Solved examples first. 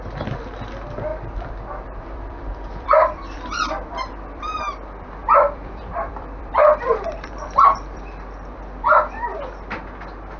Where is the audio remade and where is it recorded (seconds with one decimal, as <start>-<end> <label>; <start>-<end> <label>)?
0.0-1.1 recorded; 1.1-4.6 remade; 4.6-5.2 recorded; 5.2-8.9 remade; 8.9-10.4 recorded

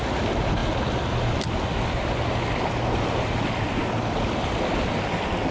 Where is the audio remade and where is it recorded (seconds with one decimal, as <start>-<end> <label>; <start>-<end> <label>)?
0.0-5.5 recorded

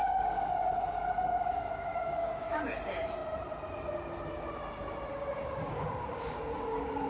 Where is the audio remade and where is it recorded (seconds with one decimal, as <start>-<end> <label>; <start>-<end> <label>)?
0.0-0.7 remade; 0.7-1.3 recorded; 1.3-2.6 remade; 2.6-5.1 recorded; 5.1-7.1 remade

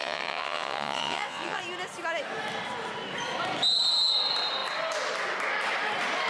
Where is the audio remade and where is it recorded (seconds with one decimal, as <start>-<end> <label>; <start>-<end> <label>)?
0.0-1.6 remade; 1.6-6.3 recorded

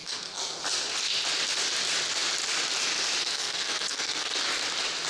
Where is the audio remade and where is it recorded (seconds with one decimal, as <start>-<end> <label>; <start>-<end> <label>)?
0.0-0.6 remade; 0.6-3.2 recorded; 3.2-4.3 remade; 4.3-5.1 recorded

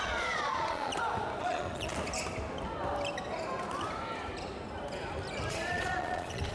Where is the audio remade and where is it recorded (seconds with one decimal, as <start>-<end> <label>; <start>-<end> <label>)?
0.0-0.9 remade; 0.9-1.4 recorded; 1.4-1.9 remade; 1.9-5.5 recorded; 5.5-6.5 remade